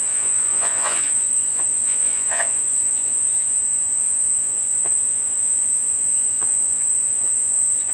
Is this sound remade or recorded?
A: remade